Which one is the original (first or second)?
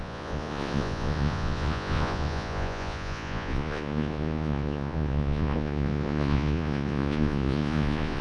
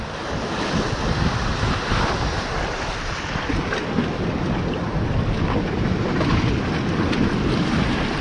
second